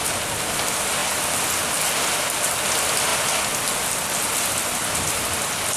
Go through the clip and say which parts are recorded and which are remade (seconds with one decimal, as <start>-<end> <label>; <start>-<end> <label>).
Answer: 0.0-5.8 recorded